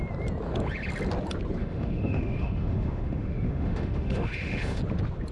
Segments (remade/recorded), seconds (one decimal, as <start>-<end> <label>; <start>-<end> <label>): 0.0-1.6 recorded; 1.6-4.8 remade; 4.8-5.3 recorded